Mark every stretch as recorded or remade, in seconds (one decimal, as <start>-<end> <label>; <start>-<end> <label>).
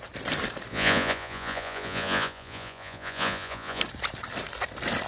0.0-0.7 recorded; 0.7-3.8 remade; 3.8-5.1 recorded